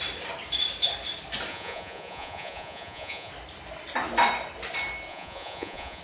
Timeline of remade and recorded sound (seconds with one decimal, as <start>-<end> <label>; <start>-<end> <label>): 0.0-1.5 recorded; 1.5-3.3 remade; 3.3-5.1 recorded; 5.1-6.0 remade